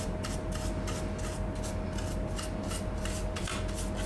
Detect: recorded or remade recorded